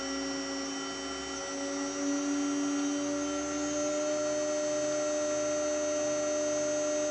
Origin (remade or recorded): recorded